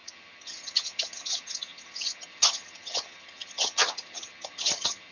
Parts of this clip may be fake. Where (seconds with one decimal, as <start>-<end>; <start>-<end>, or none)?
0.0-5.1